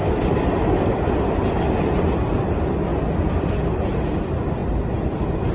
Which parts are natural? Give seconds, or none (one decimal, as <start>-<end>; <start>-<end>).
2.0-2.9; 3.5-5.5